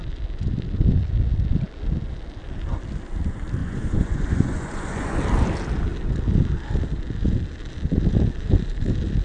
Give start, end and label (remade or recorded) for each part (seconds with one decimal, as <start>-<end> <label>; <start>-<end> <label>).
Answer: 0.0-3.6 recorded; 3.6-5.2 remade; 5.2-9.2 recorded